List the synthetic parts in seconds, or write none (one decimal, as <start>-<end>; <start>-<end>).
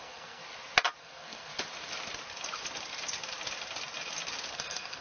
0.0-0.4; 1.0-1.5; 4.5-5.0